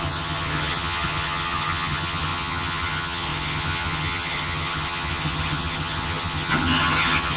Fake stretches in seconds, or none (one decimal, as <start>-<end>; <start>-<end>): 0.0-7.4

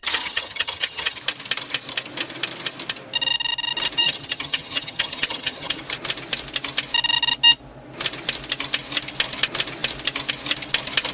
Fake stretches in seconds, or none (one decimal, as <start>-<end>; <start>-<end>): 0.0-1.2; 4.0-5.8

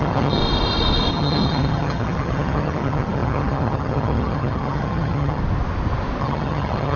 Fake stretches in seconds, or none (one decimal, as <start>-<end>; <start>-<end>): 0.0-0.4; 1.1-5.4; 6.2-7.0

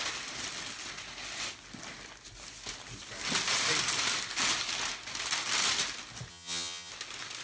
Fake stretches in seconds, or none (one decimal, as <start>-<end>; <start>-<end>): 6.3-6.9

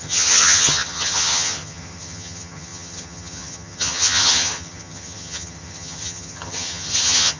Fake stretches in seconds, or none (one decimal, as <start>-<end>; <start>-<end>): 0.0-7.4

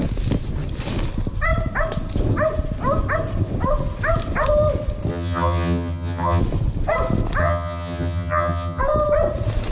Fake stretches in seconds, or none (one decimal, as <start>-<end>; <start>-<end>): 5.1-6.4; 7.4-8.8